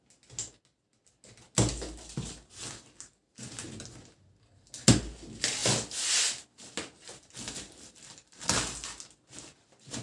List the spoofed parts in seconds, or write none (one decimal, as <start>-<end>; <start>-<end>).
none